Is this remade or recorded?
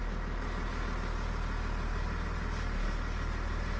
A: recorded